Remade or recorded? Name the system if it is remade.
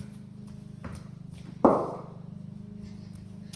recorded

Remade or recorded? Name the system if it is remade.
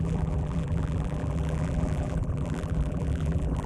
remade, vocoder, BigVGAN v2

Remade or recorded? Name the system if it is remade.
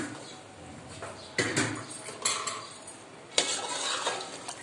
recorded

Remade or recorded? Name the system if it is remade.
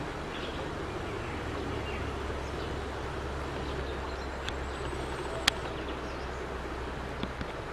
recorded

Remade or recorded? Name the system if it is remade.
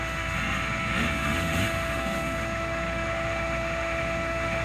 remade, autoencoder, DAC-VAE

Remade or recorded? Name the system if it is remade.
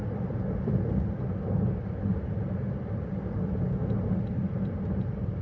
recorded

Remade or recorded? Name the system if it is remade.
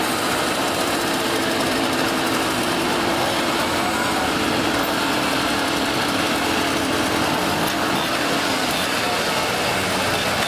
recorded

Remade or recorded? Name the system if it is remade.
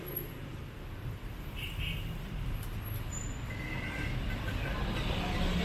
recorded